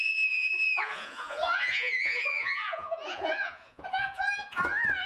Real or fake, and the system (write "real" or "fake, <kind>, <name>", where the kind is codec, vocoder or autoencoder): fake, vocoder, Vocos